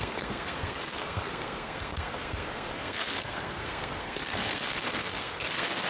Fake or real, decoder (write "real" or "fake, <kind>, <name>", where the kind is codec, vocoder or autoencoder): fake, codec, SNAC